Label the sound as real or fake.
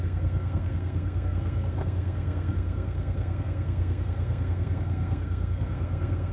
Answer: fake